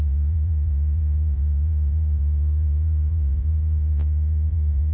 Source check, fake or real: fake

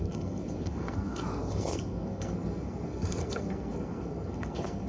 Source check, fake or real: fake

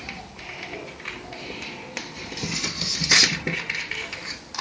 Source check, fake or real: real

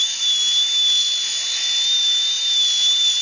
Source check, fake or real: real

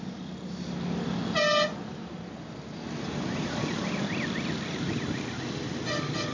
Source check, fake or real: real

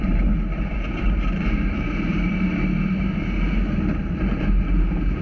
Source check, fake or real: fake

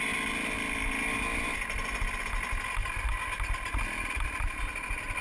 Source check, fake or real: real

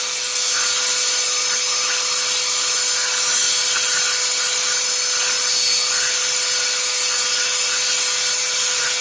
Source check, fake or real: real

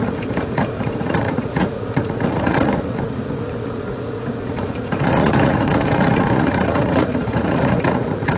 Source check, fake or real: fake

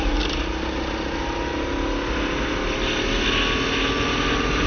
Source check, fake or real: real